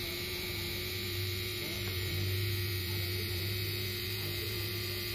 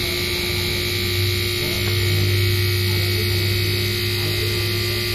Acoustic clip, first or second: second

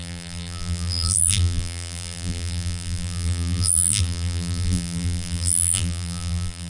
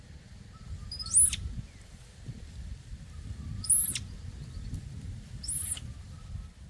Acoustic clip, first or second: second